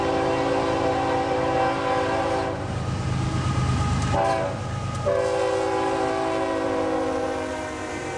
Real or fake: real